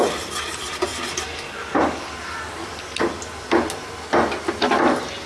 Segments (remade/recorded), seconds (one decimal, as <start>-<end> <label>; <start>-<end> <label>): 0.0-5.3 recorded